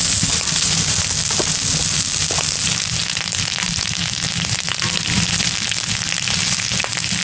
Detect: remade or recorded recorded